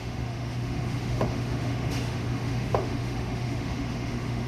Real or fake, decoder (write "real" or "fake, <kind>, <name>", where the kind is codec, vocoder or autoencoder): fake, autoencoder, DAC-VAE